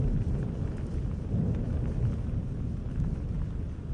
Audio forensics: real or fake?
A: real